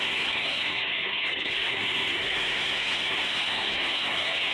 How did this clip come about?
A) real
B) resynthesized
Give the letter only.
B